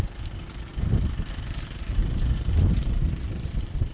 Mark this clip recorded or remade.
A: remade